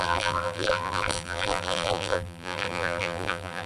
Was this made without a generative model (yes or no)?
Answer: no